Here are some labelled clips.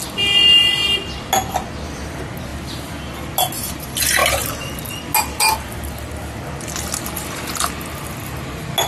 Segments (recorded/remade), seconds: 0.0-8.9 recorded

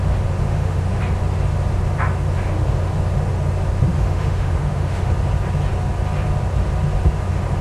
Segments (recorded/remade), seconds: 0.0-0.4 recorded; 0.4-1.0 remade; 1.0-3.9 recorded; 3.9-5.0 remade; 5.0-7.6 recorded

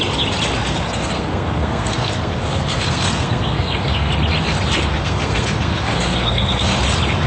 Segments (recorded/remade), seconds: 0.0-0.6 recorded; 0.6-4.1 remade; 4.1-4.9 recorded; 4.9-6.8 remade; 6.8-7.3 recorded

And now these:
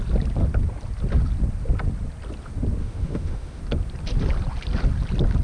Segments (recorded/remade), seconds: 0.0-2.8 recorded; 2.8-3.6 remade; 3.6-5.4 recorded

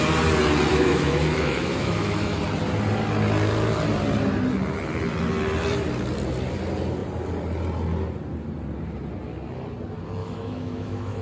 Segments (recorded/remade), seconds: 0.0-0.7 recorded; 0.7-2.4 remade; 2.4-10.2 recorded; 10.2-11.2 remade

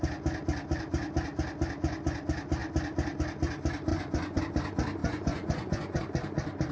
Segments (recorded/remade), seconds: 0.0-3.9 recorded; 3.9-4.4 remade; 4.4-5.0 recorded; 5.0-6.0 remade; 6.0-6.7 recorded

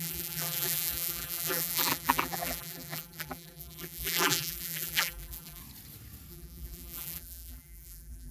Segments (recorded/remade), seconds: 0.0-5.6 remade; 5.6-6.3 recorded; 6.3-8.3 remade

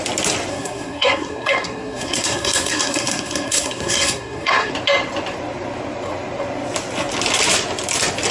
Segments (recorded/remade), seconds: 0.0-0.5 recorded; 0.5-4.7 remade; 4.7-8.3 recorded